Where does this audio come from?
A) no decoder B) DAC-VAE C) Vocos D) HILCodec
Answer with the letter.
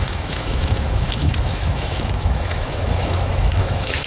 B